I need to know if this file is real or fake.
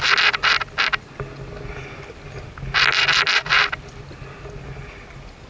real